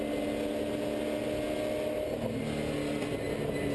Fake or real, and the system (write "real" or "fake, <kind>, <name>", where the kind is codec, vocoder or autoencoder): real